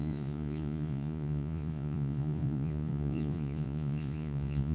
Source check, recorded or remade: remade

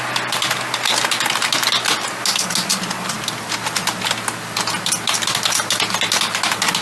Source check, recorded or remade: recorded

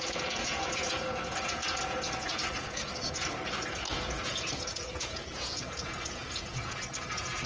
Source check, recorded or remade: remade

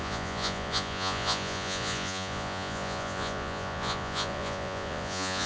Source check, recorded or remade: remade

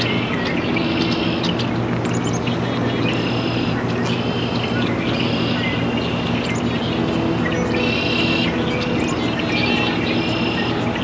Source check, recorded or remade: recorded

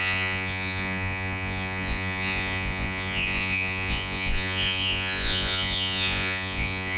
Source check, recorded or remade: remade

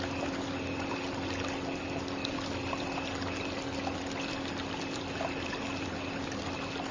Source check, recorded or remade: recorded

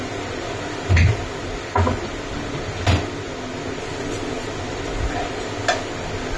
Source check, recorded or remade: recorded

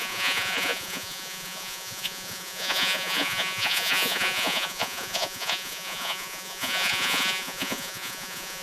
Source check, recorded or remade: remade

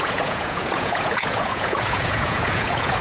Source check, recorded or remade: remade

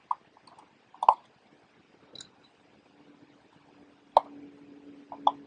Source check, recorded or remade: recorded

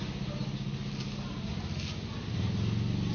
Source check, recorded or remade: recorded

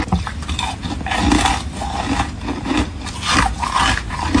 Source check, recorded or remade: recorded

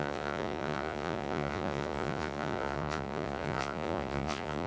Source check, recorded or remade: remade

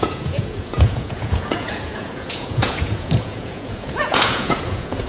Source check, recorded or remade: remade